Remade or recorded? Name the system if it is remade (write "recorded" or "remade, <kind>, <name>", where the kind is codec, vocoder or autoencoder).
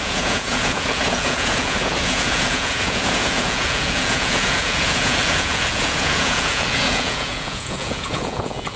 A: remade, vocoder, Vocos